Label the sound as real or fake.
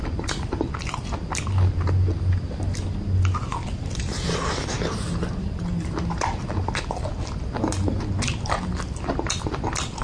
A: real